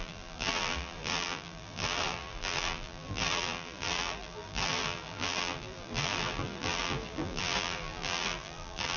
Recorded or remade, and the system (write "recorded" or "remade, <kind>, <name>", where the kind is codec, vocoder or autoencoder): remade, vocoder, BigVGAN v2